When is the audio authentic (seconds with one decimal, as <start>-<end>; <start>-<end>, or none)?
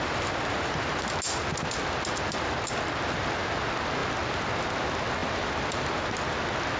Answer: 0.0-6.8